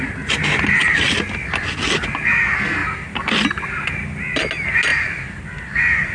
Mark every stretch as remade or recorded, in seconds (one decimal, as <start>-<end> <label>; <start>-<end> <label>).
0.0-2.8 recorded; 2.8-3.3 remade; 3.3-4.9 recorded; 4.9-6.1 remade